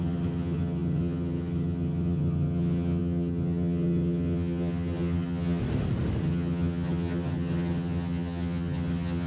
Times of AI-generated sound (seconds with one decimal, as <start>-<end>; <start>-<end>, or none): 0.0-5.6; 6.2-9.3